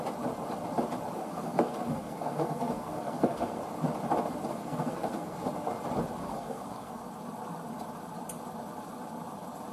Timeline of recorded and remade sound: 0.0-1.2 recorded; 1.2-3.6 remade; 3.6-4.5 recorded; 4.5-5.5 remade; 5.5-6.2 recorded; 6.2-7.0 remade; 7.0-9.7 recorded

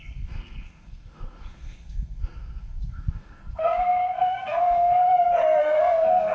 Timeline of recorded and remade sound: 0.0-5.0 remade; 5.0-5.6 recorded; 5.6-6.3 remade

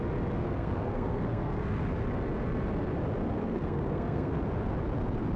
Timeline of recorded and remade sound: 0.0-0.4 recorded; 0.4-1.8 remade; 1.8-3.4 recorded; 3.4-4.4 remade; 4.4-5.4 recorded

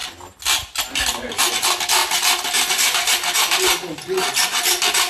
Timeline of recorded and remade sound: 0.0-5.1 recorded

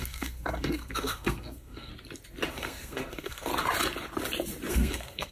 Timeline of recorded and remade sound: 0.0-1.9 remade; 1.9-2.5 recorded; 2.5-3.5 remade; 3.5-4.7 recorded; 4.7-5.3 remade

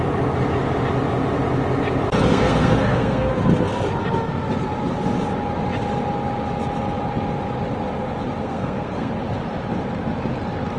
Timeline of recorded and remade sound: 0.0-2.3 recorded; 2.3-3.3 remade; 3.3-8.4 recorded; 8.4-9.1 remade; 9.1-10.8 recorded